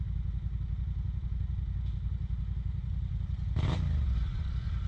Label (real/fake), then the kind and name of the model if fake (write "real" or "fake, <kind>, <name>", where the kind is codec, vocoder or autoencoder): real